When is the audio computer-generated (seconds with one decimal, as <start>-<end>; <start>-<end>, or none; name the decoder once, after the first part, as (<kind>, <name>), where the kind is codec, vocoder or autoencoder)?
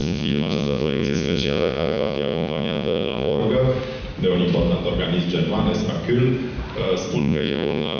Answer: 0.0-3.4 (vocoder, Vocos); 7.2-8.0